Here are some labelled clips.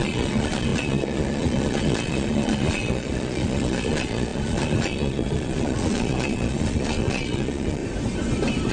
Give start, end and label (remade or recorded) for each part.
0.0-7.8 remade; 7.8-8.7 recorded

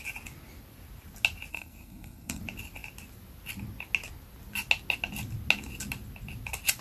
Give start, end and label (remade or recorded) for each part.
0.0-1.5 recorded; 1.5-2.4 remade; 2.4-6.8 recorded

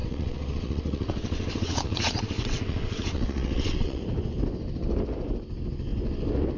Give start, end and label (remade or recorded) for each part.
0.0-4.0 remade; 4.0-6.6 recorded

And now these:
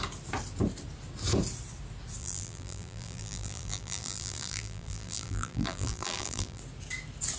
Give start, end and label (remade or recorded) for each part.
0.0-2.2 recorded; 2.2-6.6 remade; 6.6-7.4 recorded

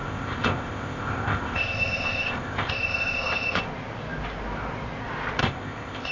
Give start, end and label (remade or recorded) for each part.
0.0-3.6 remade; 3.6-5.4 recorded; 5.4-6.1 remade

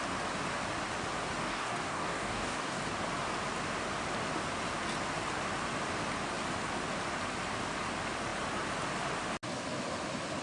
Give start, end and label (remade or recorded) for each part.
0.0-1.5 recorded; 1.5-2.8 remade; 2.8-10.4 recorded

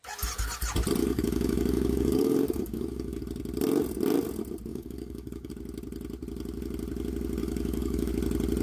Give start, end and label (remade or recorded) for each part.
0.0-1.0 recorded; 1.0-3.2 remade; 3.2-4.7 recorded; 4.7-5.5 remade; 5.5-7.4 recorded; 7.4-8.1 remade; 8.1-8.6 recorded

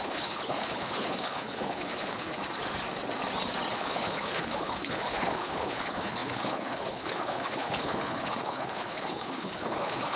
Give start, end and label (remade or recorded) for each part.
0.0-2.3 remade; 2.3-3.7 recorded; 3.7-10.2 remade